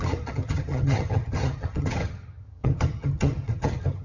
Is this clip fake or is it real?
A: fake